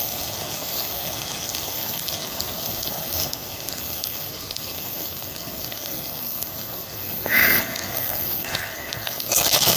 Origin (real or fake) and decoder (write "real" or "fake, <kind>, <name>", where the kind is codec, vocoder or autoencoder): fake, codec, SNAC